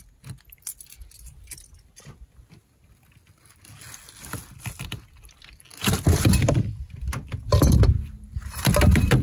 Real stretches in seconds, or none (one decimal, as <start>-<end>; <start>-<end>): 0.0-9.2